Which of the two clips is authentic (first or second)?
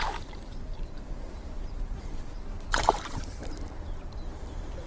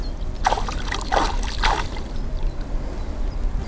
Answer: second